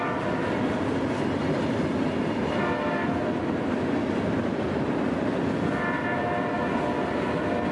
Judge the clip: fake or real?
real